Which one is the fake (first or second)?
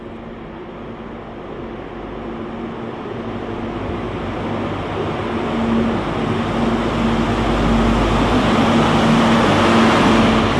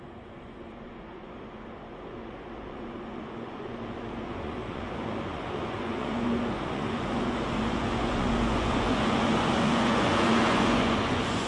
second